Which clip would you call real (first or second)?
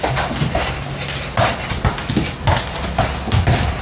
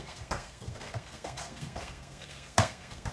first